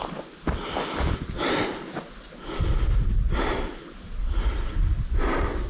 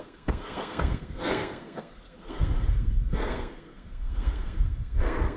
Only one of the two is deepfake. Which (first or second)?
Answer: second